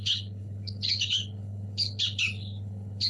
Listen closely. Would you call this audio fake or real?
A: fake